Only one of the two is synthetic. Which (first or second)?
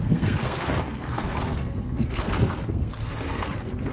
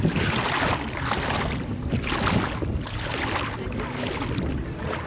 first